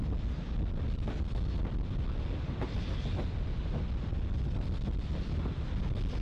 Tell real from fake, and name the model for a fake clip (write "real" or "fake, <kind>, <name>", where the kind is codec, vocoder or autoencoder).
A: real